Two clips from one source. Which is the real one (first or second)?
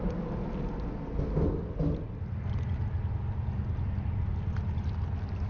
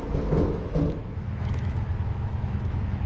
first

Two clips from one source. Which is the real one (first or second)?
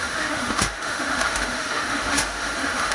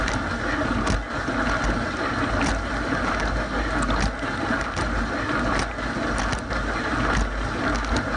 second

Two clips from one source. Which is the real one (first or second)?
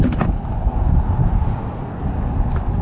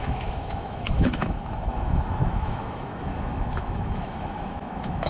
first